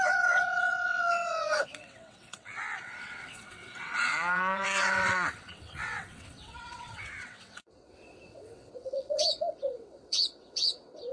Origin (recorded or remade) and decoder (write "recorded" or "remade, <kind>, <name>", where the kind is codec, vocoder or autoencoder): remade, vocoder, WaveNeXt